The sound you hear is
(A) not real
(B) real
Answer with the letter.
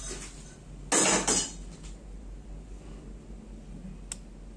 B